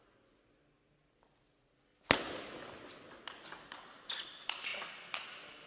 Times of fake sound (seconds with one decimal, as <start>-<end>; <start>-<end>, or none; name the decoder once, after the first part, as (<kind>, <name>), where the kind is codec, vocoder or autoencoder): none